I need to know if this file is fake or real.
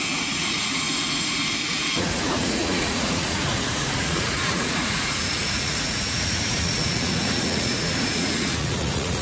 fake